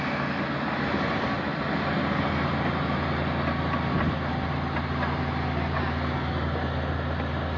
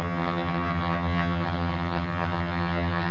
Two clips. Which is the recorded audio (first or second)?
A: first